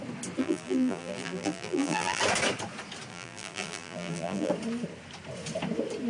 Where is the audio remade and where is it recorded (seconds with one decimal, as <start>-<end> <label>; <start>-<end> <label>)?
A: 0.0-0.4 recorded; 0.4-2.2 remade; 2.2-3.1 recorded; 3.1-4.5 remade; 4.5-6.1 recorded